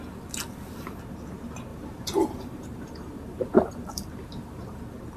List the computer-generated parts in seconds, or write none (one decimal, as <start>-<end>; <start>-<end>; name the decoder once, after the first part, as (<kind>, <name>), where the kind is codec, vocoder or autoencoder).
1.7-4.8 (vocoder, BigVGAN v2)